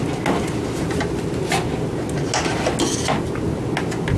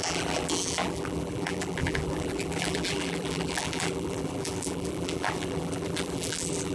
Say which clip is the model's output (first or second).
second